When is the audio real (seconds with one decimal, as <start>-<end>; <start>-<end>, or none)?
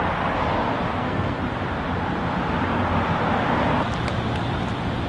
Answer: 0.0-0.9; 1.4-5.1